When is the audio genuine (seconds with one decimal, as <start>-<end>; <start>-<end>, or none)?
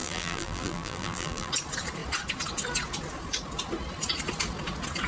1.5-5.1